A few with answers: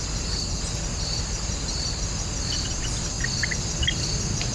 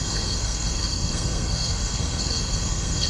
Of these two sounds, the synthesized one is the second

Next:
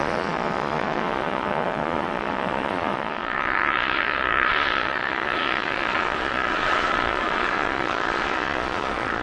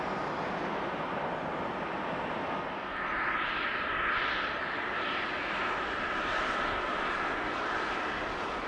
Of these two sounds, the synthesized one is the first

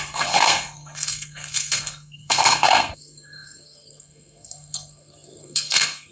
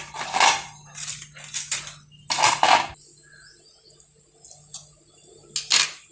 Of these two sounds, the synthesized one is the first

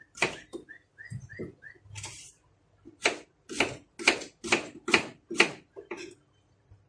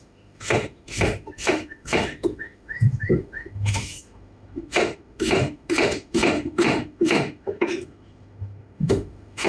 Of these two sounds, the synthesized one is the second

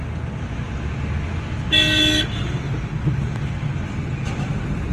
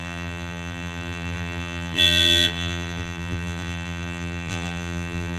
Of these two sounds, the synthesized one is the second